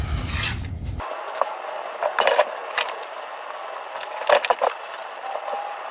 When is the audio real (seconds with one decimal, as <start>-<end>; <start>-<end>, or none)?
0.0-5.9